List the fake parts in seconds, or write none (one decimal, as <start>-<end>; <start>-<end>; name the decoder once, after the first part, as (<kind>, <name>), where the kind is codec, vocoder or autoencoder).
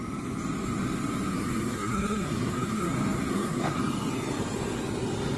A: 1.3-2.9 (codec, SNAC); 3.3-3.8